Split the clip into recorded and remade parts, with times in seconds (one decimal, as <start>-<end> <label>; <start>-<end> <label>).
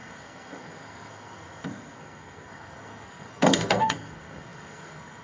0.0-5.2 remade